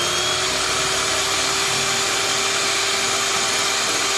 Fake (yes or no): no